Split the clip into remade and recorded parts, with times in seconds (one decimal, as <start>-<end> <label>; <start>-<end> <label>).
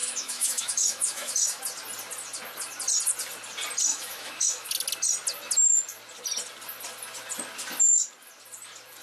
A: 0.0-1.6 remade; 1.6-3.9 recorded; 3.9-4.7 remade; 4.7-9.0 recorded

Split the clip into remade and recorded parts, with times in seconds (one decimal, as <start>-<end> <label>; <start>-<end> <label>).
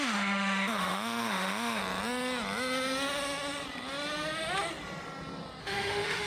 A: 0.0-1.8 remade; 1.8-5.6 recorded; 5.6-6.3 remade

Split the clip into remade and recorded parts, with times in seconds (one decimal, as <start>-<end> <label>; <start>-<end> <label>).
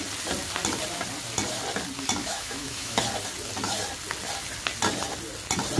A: 0.0-2.2 recorded; 2.2-3.0 remade; 3.0-5.8 recorded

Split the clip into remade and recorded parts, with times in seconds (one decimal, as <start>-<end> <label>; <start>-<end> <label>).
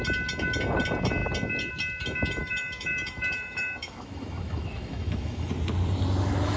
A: 0.0-2.4 recorded; 2.4-5.5 remade; 5.5-6.6 recorded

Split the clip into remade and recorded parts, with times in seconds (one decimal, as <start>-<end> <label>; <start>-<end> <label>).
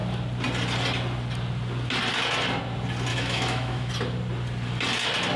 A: 0.0-3.1 recorded; 3.1-3.9 remade; 3.9-5.4 recorded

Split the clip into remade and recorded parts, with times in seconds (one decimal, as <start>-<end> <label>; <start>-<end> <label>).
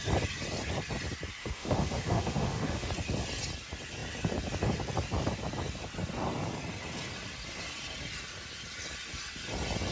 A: 0.0-1.4 recorded; 1.4-2.9 remade; 2.9-9.9 recorded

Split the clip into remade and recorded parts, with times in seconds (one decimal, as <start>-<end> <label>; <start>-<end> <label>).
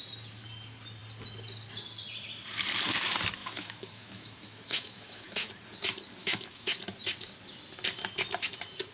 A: 0.0-3.4 recorded; 3.4-5.5 remade; 5.5-6.2 recorded; 6.2-6.8 remade; 6.8-8.9 recorded